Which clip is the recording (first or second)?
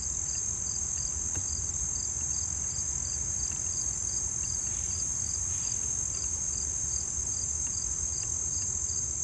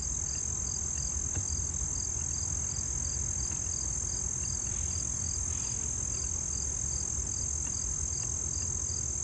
second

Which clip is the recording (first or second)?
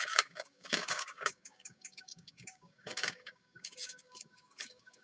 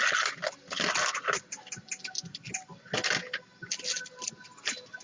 second